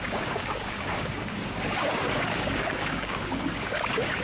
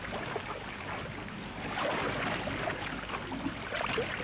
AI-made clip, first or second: first